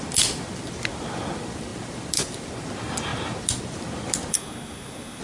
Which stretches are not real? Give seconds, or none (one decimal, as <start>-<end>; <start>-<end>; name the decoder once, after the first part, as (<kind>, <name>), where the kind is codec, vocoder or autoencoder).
4.3-5.2 (codec, SNAC)